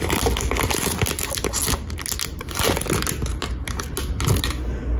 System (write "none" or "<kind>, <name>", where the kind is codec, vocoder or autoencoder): none